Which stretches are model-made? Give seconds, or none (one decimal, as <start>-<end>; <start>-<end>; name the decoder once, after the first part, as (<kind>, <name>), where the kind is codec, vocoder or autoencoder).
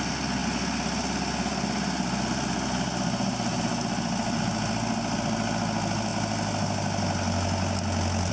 none